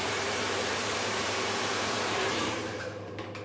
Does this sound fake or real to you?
fake